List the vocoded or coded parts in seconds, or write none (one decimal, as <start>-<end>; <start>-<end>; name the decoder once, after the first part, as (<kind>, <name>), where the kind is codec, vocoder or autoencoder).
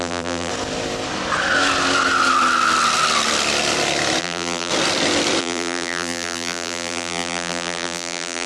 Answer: 0.0-0.5 (vocoder, BigVGAN v2); 4.2-4.7; 5.4-8.5